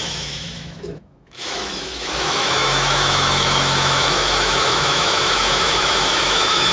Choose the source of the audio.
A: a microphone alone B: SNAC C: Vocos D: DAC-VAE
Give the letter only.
D